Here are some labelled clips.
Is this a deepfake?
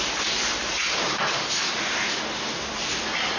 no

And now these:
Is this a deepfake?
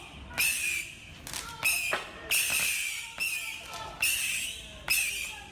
no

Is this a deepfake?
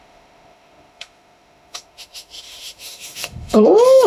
yes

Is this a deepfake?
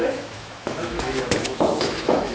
yes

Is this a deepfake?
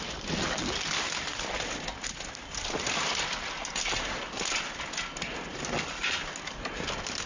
no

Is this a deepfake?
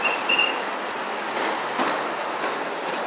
no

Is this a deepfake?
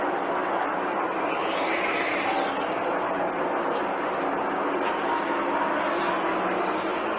no